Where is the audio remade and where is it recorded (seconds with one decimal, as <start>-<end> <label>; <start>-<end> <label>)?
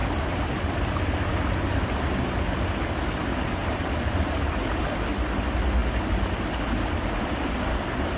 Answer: 0.0-3.6 recorded; 3.6-4.5 remade; 4.5-8.2 recorded